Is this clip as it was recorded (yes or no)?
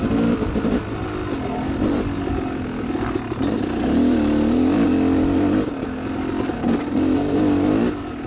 yes